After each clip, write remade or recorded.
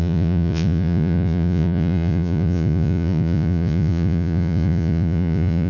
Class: remade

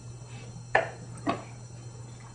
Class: recorded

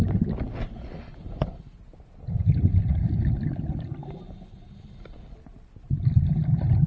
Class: recorded